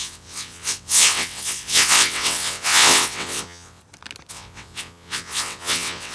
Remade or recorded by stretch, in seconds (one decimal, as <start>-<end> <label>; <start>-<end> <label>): 0.0-3.8 remade; 3.8-4.3 recorded; 4.3-6.1 remade